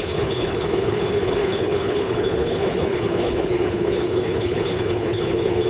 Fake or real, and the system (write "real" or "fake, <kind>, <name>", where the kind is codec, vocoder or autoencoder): fake, codec, HILCodec